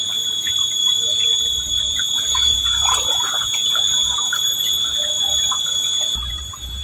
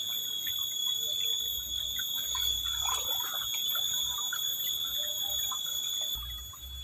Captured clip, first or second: second